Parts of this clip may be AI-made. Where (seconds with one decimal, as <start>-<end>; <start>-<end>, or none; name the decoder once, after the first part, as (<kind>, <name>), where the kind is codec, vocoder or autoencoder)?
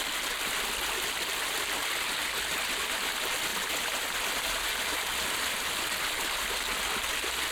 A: 3.5-6.4 (vocoder, BigVGAN v2)